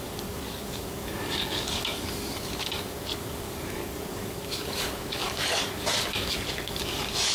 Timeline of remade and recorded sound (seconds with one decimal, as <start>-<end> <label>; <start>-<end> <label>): 0.0-7.3 remade